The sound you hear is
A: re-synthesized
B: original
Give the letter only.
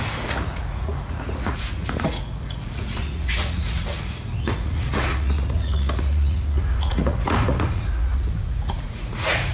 A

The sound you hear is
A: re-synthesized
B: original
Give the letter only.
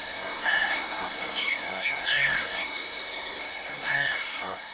A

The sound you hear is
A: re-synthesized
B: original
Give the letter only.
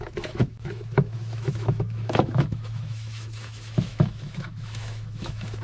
A